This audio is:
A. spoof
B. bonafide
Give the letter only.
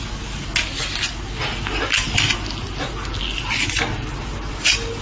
B